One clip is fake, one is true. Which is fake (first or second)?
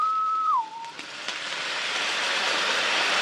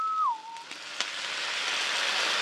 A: first